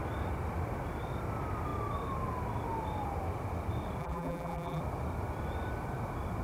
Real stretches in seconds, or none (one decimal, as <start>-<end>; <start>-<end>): 0.0-4.0; 4.8-6.4